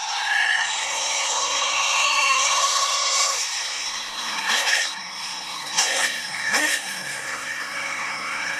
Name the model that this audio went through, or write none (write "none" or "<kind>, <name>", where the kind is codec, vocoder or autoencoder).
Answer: codec, SNAC